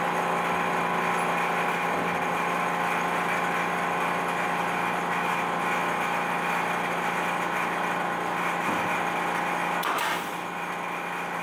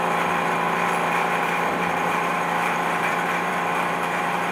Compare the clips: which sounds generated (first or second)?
second